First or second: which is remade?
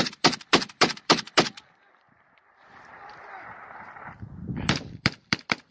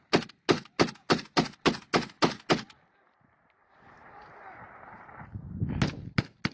first